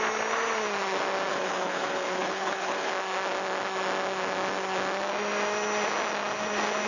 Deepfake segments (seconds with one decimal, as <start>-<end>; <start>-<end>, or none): 1.3-2.9